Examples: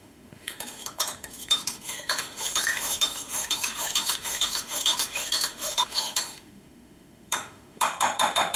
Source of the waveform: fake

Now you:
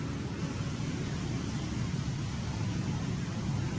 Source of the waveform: real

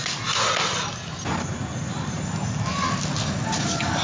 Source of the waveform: real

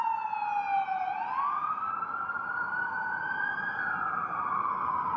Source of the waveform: real